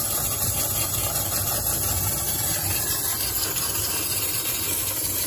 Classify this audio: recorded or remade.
recorded